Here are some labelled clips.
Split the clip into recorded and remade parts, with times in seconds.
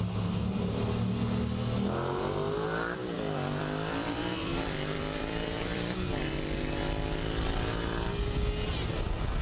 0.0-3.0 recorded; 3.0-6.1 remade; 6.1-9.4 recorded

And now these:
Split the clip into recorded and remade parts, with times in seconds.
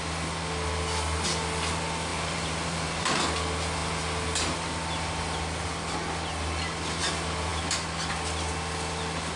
0.0-2.1 recorded; 2.1-3.2 remade; 3.2-9.4 recorded